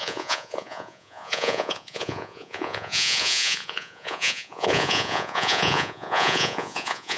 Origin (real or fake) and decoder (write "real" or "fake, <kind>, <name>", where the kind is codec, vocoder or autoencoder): fake, vocoder, Vocos